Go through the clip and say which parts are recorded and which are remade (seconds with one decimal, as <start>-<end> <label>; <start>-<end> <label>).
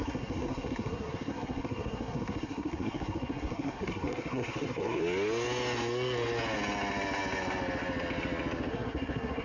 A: 0.0-5.0 remade; 5.0-8.7 recorded; 8.7-9.4 remade